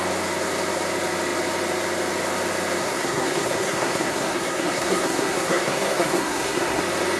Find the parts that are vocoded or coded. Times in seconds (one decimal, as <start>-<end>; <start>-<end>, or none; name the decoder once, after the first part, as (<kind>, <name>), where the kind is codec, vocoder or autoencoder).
2.8-6.8 (codec, SNAC)